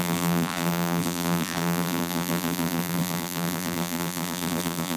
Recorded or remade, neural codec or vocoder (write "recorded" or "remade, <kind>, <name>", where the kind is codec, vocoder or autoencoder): remade, vocoder, BigVGAN v2